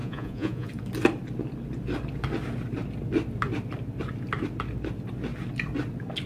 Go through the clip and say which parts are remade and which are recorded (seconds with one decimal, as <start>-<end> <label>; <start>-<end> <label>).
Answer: 0.0-0.7 remade; 0.7-6.3 recorded